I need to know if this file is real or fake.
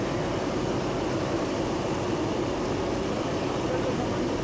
fake